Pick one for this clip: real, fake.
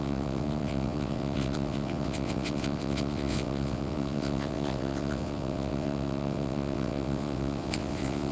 fake